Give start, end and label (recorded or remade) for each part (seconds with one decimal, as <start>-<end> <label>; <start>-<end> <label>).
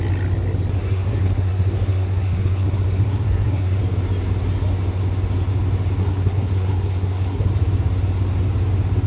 0.0-0.8 recorded; 0.8-3.8 remade; 3.8-6.0 recorded; 6.0-7.5 remade; 7.5-9.1 recorded